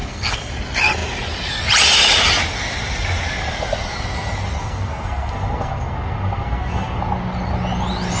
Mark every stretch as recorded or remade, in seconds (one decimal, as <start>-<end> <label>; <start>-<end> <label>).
0.0-0.5 remade; 0.5-4.6 recorded; 4.6-7.0 remade; 7.0-8.2 recorded